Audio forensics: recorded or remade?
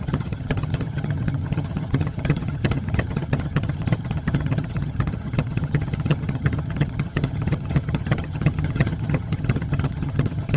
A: remade